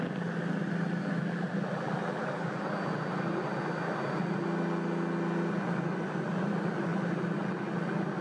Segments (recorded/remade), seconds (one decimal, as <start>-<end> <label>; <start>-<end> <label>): 0.0-8.2 recorded